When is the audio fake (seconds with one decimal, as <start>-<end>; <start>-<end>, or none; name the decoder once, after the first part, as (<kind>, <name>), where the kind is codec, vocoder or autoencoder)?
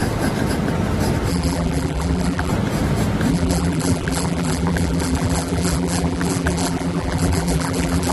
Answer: 1.3-2.5 (vocoder, BigVGAN v2); 3.3-8.1